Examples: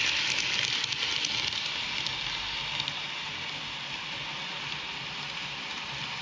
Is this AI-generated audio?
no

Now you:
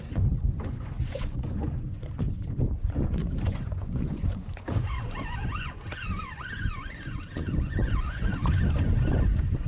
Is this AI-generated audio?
yes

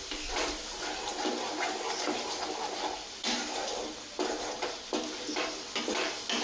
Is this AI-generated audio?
no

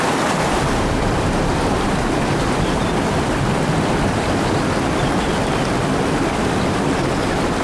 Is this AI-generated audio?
yes